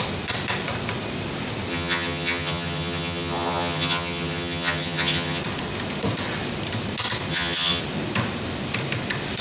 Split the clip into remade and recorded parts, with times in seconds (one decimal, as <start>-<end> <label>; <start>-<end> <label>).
0.0-1.7 recorded; 1.7-5.4 remade; 5.4-7.3 recorded; 7.3-7.8 remade; 7.8-9.4 recorded